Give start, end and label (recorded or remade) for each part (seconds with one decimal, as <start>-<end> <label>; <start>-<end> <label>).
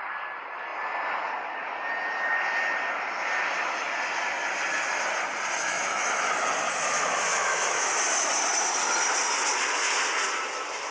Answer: 0.0-5.6 recorded; 5.6-6.3 remade; 6.3-7.3 recorded; 7.3-7.8 remade; 7.8-10.9 recorded